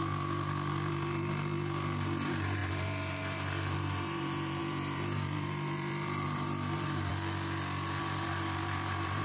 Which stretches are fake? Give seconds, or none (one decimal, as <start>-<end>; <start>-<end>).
0.0-7.1; 8.0-9.2